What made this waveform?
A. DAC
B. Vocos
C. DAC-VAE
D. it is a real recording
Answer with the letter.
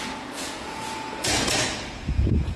B